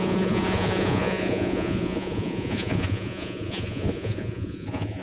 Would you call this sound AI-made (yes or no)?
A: yes